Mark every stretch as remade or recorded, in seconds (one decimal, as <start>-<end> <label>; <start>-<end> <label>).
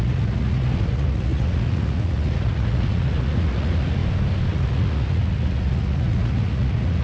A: 0.0-4.0 remade; 4.0-4.5 recorded; 4.5-7.0 remade